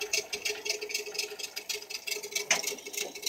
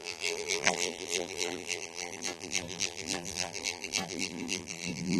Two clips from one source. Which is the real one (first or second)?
first